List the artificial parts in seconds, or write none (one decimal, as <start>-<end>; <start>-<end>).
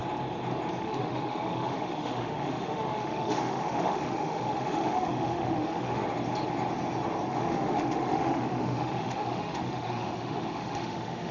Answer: 0.8-6.0; 7.3-11.3